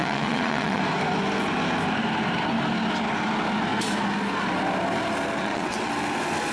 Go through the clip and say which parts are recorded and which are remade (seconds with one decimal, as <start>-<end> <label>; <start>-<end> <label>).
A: 0.0-0.8 remade; 0.8-5.4 recorded; 5.4-5.9 remade; 5.9-6.5 recorded